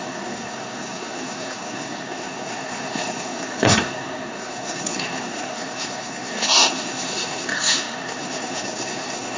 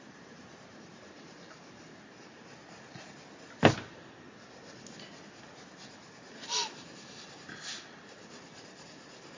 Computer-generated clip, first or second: first